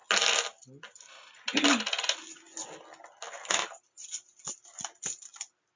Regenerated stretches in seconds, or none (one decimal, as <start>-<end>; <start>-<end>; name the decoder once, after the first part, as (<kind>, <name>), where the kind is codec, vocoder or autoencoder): none